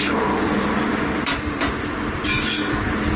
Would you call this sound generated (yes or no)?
no